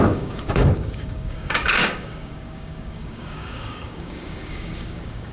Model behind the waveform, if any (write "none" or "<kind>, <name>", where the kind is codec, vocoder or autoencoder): codec, DAC